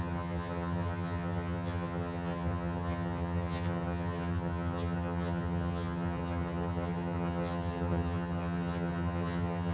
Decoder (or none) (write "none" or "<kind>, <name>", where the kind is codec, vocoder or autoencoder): vocoder, HiFi-GAN